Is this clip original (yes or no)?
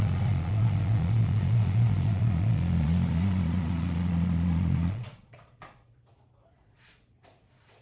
no